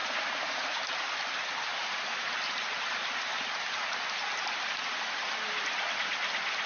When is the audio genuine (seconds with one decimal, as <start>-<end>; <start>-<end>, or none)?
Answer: 0.8-1.8; 5.8-6.7